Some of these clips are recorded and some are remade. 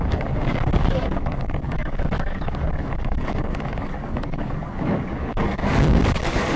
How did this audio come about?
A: remade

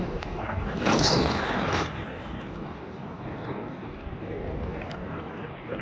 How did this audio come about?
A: remade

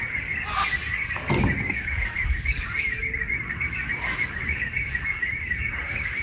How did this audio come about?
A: remade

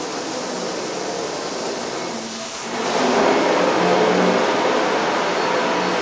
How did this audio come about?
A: recorded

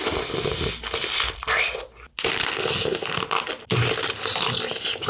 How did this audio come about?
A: recorded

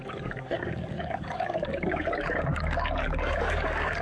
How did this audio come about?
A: remade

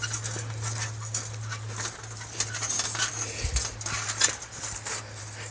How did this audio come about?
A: recorded